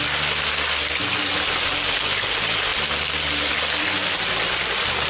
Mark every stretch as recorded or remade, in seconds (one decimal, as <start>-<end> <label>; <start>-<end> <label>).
0.0-5.1 recorded